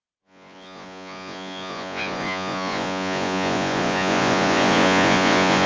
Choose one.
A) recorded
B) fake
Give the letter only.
B